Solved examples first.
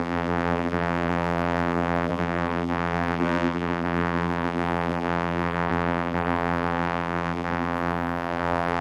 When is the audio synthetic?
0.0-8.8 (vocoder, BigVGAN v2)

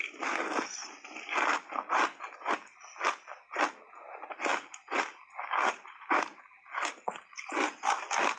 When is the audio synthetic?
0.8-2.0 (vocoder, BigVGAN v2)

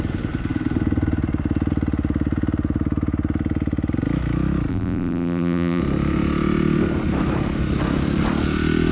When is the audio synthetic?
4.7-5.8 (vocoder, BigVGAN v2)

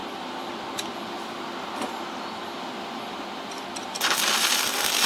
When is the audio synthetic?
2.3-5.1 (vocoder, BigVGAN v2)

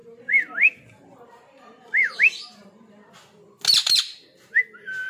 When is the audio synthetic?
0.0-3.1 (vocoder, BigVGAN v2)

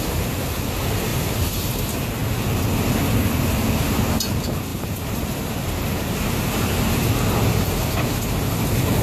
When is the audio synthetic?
1.1-1.8 (vocoder, BigVGAN v2); 4.7-6.7